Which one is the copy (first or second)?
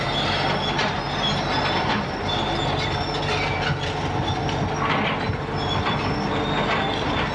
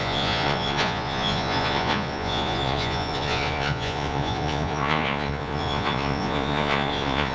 second